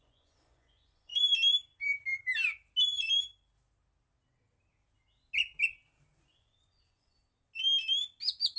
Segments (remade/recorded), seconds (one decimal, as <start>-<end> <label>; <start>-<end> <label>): 0.0-1.1 remade; 1.1-6.2 recorded; 6.2-7.2 remade; 7.2-8.6 recorded